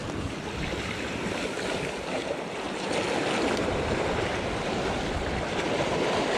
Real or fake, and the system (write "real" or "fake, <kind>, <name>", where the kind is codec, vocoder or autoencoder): real